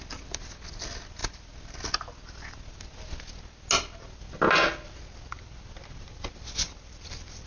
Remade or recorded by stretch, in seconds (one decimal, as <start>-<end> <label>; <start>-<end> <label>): 0.0-7.5 recorded